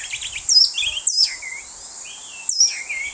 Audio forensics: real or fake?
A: real